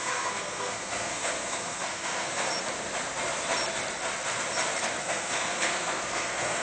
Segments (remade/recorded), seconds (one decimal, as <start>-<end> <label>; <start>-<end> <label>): 0.0-2.5 remade; 2.5-5.0 recorded; 5.0-6.6 remade